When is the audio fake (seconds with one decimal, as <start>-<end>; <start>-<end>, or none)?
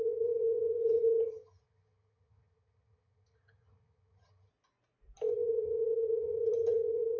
0.0-4.5; 5.3-7.2